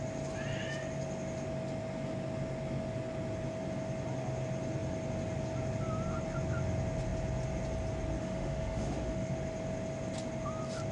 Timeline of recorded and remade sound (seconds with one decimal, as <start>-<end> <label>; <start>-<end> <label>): 0.0-8.2 recorded; 8.2-9.3 remade; 9.3-10.9 recorded